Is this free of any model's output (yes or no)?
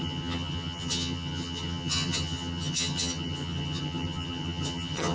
no